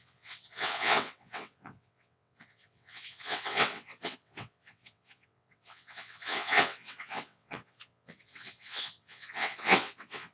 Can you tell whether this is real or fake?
fake